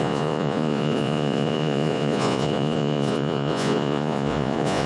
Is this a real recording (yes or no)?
no